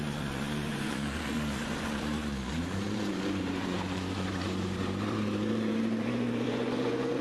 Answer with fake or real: fake